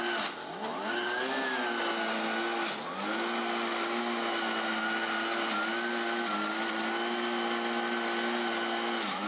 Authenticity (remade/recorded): recorded